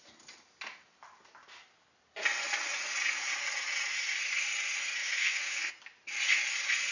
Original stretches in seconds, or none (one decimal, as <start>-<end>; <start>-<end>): 0.0-5.0; 5.7-6.9